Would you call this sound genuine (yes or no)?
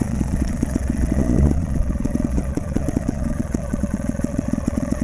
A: no